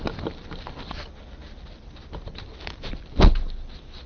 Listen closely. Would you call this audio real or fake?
real